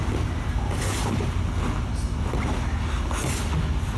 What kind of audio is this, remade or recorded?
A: recorded